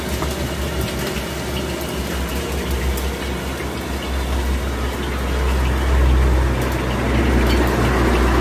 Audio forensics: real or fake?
real